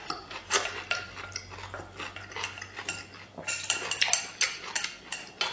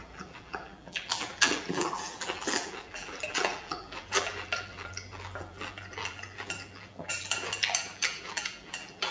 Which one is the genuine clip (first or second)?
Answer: first